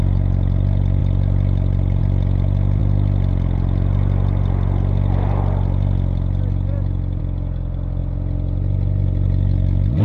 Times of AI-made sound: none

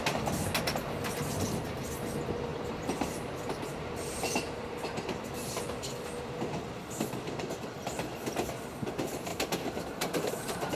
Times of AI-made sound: 2.5-5.9; 9.3-10.3